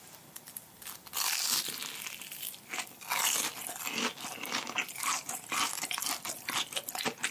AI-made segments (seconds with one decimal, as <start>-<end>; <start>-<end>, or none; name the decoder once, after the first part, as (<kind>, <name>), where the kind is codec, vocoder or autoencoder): none